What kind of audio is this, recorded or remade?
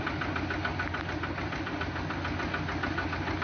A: recorded